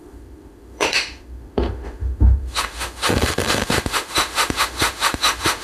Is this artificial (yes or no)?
yes